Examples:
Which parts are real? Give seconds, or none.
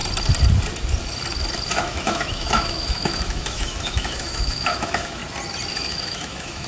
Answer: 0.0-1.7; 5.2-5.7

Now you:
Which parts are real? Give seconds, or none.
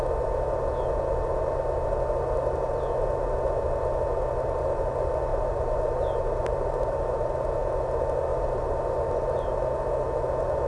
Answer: 0.0-5.3; 7.3-8.3; 9.1-10.7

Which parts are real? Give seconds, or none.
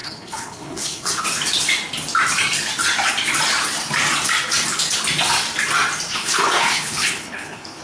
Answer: 1.2-6.1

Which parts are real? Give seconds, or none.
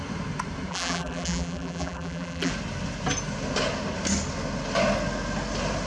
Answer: 0.0-0.7; 2.5-5.9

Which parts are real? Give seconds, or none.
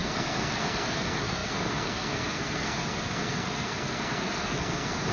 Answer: none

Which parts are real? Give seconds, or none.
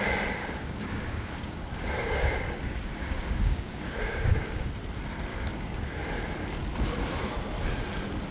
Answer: 0.0-0.4; 4.7-5.3; 6.1-8.3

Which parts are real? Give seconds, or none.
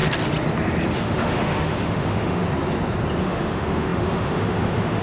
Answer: 0.0-0.9; 2.4-3.2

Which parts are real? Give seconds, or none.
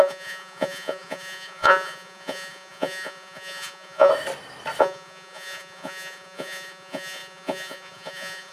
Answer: 4.1-4.8